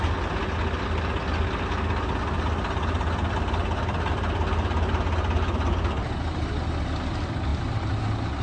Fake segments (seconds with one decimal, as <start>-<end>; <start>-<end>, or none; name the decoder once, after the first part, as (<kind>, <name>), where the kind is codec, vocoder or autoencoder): none